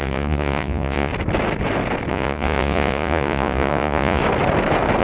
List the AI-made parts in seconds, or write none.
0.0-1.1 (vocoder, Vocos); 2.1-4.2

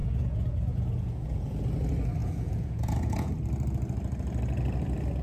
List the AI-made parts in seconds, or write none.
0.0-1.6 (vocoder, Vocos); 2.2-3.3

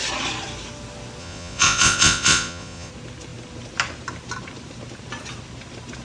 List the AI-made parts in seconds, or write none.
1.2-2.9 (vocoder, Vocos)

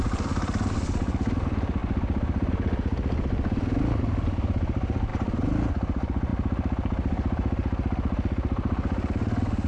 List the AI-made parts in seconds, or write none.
none